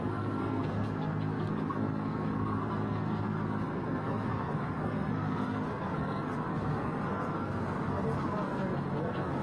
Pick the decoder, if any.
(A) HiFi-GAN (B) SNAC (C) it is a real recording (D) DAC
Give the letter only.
B